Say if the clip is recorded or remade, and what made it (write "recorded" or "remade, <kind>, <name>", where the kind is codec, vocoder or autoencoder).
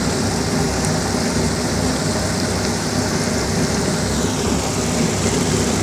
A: recorded